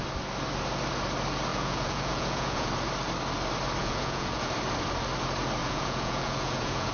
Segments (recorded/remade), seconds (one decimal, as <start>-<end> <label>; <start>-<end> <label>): 0.0-1.5 recorded; 1.5-2.7 remade; 2.7-3.8 recorded; 3.8-4.5 remade; 4.5-5.6 recorded; 5.6-6.9 remade